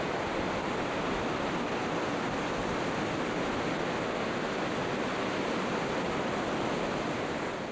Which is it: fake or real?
real